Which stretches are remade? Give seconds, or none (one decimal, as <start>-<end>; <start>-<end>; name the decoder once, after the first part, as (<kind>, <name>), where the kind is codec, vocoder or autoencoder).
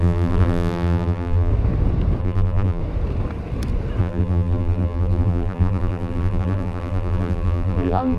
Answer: 0.0-1.5 (vocoder, BigVGAN v2); 2.2-2.8; 4.0-8.2